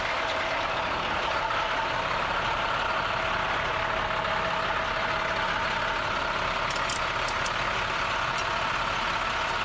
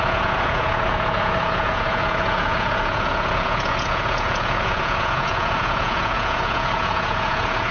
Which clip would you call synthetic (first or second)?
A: second